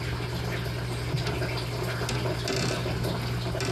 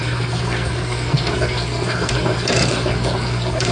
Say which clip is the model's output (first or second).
second